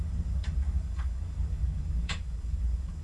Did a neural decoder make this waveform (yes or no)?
yes